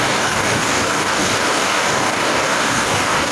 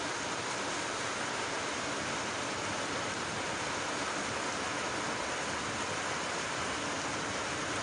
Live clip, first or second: second